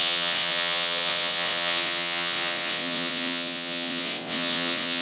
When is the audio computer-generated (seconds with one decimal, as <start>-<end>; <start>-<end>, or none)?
0.0-5.0